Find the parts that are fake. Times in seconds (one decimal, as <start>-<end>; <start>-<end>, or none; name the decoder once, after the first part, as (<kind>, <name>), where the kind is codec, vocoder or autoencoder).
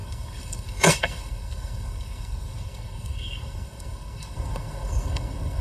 0.0-5.6 (codec, SNAC)